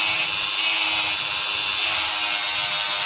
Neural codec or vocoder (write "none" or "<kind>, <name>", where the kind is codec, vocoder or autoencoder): none